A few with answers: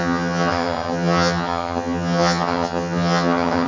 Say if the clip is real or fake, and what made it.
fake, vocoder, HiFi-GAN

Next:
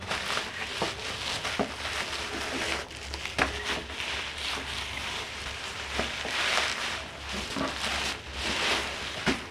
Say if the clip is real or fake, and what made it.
real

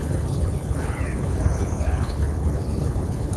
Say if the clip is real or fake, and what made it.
fake, codec, HILCodec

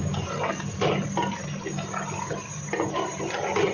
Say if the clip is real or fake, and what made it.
real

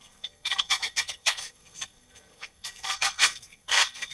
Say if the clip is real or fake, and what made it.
fake, codec, SNAC